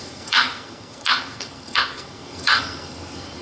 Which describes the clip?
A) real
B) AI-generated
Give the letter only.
B